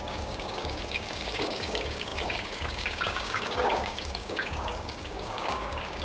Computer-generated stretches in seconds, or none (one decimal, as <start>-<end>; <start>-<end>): 0.0-6.0